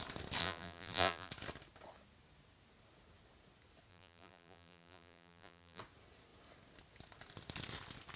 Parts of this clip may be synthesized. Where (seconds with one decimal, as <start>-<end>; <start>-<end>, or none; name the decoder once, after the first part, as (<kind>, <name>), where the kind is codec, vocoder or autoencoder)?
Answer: 0.4-1.3 (vocoder, BigVGAN v2); 3.9-5.8